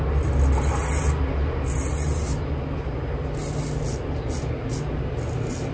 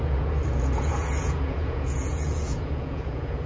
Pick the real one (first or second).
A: first